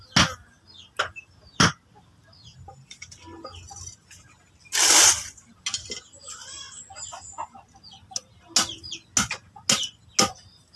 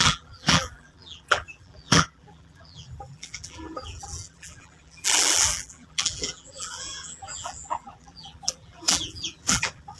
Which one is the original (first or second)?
first